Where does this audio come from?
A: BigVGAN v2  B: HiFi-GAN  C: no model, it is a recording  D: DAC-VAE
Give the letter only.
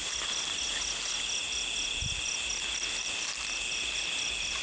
C